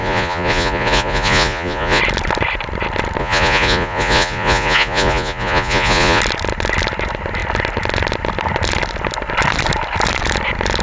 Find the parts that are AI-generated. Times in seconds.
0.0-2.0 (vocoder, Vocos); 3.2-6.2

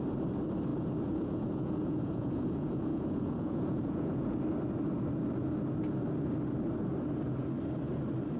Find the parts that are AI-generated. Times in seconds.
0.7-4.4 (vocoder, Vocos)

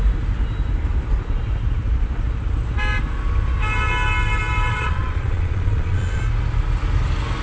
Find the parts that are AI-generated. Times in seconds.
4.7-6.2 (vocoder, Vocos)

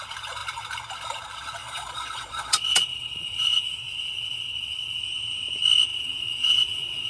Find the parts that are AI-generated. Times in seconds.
1.6-5.0 (vocoder, Vocos); 5.9-7.1

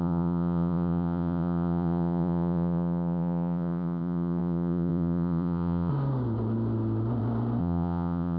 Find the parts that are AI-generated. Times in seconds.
0.0-5.9 (vocoder, Vocos); 7.6-8.4

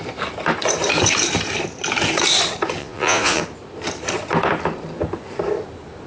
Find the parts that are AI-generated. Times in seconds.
2.8-3.4 (vocoder, Vocos)

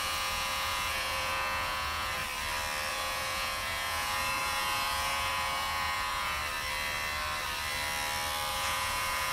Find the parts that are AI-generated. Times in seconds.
0.0-2.2 (vocoder, Vocos); 2.9-6.4; 8.5-9.3